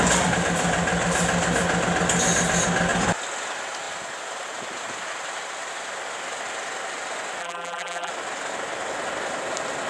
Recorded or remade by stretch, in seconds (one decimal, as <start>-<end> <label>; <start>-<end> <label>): 0.0-7.4 recorded; 7.4-8.1 remade; 8.1-9.9 recorded